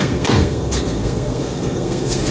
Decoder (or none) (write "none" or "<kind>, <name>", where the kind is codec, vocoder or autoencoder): codec, SNAC